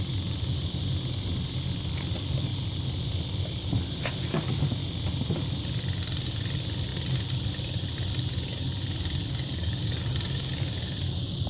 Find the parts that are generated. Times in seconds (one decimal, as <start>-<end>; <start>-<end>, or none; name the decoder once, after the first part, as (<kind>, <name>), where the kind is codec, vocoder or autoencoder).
9.2-10.5 (codec, DAC)